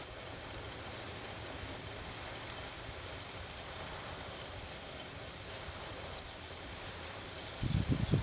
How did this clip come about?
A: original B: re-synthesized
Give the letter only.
B